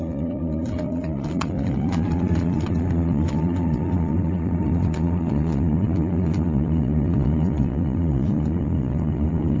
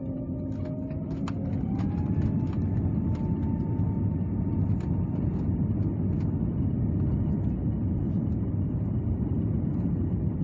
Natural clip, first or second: second